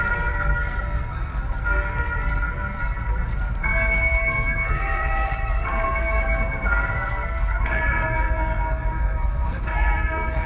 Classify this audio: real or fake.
fake